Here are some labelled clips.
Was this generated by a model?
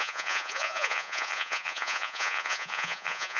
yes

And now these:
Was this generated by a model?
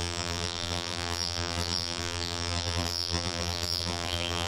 yes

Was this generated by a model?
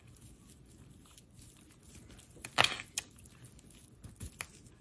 no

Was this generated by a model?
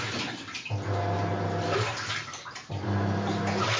no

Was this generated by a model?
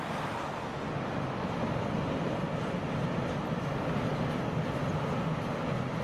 no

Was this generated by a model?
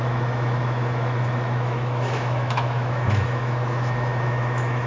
yes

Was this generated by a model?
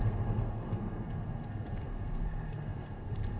yes